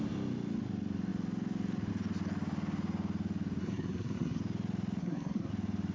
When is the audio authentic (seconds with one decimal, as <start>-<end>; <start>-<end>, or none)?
0.0-3.6; 4.4-5.0; 5.5-5.9